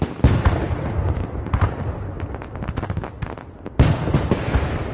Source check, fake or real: fake